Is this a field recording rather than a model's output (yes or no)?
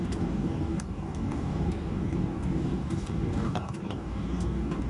no